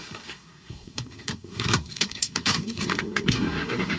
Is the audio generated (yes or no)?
yes